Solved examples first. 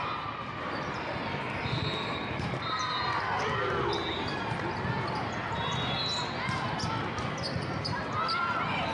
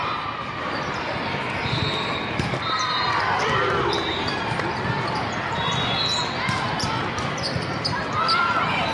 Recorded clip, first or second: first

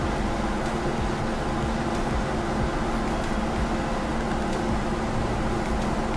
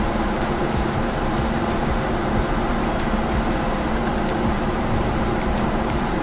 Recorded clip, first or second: first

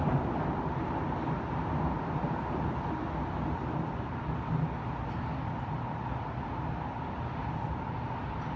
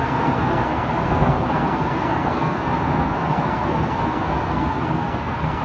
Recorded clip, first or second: first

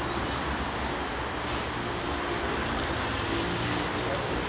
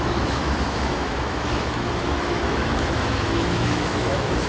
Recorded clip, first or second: first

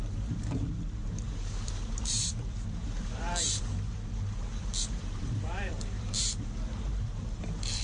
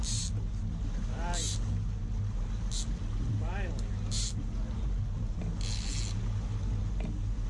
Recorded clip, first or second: second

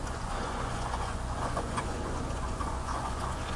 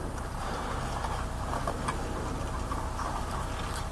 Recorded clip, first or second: second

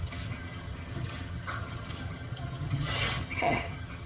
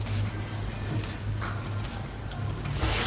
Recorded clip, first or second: second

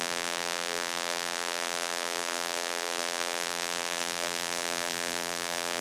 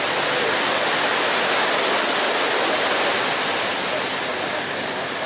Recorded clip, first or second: second